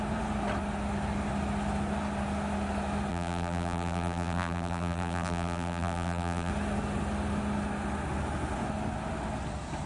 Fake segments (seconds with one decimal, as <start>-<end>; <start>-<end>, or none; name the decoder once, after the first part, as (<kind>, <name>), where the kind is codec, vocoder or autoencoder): 3.1-6.5 (vocoder, BigVGAN v2)